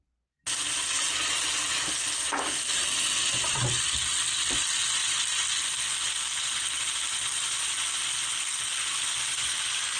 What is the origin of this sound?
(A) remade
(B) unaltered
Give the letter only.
B